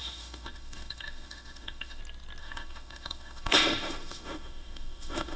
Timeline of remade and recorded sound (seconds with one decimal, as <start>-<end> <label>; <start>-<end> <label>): 0.0-2.0 remade; 2.0-2.4 recorded; 2.4-5.4 remade